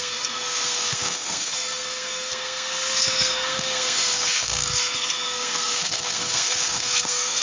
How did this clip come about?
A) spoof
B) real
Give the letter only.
A